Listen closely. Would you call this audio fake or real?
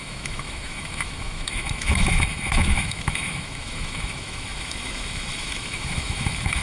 fake